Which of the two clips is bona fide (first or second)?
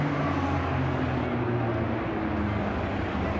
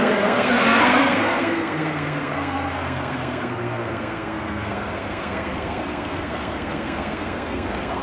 first